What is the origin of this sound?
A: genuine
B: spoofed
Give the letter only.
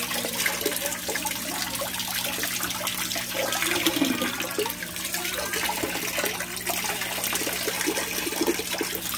A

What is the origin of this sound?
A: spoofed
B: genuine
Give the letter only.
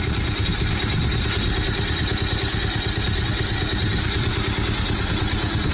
B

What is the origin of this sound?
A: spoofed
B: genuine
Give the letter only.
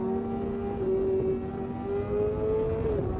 B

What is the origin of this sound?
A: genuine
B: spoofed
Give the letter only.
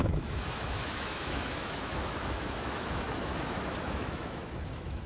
B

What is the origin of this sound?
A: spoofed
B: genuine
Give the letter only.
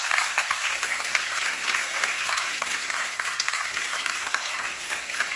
A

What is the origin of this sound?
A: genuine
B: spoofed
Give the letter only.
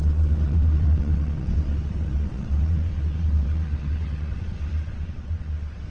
B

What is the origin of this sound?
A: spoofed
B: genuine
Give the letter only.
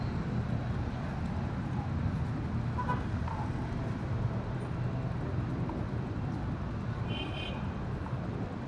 B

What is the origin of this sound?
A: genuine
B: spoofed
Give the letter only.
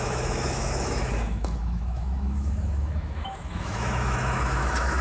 B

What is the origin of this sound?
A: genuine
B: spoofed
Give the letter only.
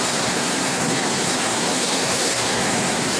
B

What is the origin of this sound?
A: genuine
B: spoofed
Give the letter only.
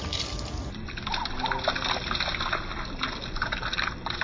A